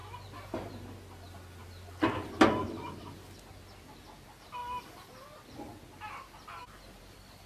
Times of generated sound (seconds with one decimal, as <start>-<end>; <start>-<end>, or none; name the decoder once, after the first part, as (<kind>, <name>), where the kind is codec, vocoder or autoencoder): none